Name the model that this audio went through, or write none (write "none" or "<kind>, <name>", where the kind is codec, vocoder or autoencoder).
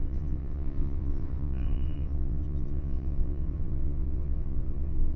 vocoder, WaveNeXt